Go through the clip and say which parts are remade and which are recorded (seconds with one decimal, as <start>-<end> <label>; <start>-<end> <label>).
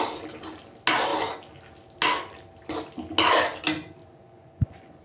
0.0-4.0 recorded; 4.0-5.0 remade